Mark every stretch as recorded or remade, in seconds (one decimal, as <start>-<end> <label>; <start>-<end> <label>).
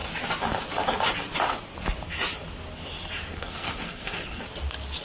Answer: 0.0-3.3 recorded; 3.3-4.4 remade; 4.4-5.0 recorded